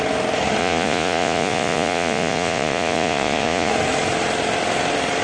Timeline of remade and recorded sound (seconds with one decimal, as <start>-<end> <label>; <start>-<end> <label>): 0.0-0.6 recorded; 0.6-3.7 remade; 3.7-5.2 recorded